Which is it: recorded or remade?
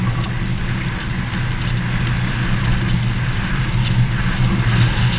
recorded